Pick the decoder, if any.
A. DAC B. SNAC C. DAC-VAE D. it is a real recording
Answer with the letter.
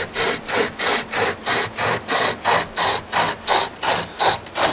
D